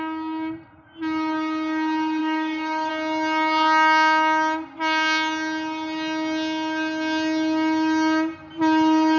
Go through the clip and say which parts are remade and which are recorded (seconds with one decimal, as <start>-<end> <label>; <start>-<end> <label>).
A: 0.0-2.2 recorded; 2.2-2.9 remade; 2.9-9.2 recorded